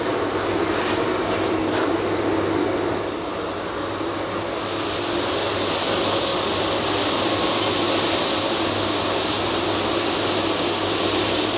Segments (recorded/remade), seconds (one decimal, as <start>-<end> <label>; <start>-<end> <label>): 0.0-11.6 recorded